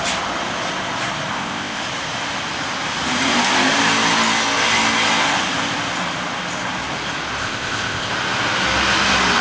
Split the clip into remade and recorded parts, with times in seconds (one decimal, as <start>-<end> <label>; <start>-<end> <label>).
0.0-1.3 recorded; 1.3-1.8 remade; 1.8-7.4 recorded; 7.4-8.1 remade; 8.1-9.4 recorded